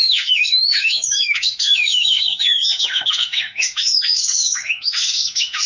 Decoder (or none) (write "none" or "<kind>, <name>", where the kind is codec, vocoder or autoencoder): autoencoder, DAC-VAE